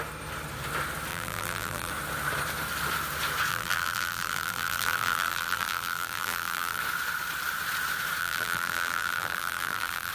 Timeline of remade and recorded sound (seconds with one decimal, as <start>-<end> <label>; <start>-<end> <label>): 0.0-1.1 recorded; 1.1-1.9 remade; 1.9-3.5 recorded; 3.5-6.8 remade; 6.8-8.2 recorded; 8.2-10.1 remade

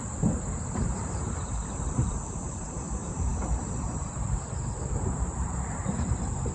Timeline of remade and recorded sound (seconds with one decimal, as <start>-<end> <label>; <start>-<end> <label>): 0.0-6.5 remade